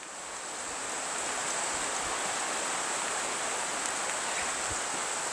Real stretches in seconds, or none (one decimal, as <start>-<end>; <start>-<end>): 0.0-5.3

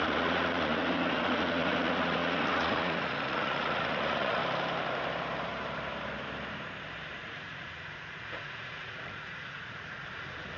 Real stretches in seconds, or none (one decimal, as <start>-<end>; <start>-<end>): 4.4-7.1

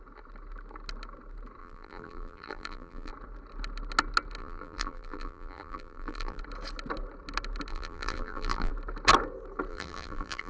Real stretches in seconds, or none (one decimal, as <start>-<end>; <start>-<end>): 0.0-1.6; 3.1-4.4; 6.4-7.7; 8.7-9.7

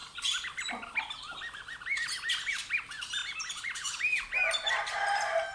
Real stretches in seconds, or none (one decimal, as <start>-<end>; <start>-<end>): 0.7-3.2; 3.9-5.5

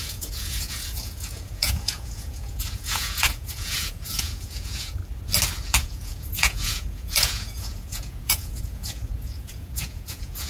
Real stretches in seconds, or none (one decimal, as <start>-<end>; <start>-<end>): 5.0-5.7

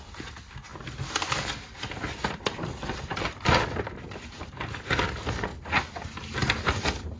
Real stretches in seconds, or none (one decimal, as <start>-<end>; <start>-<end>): 0.0-7.2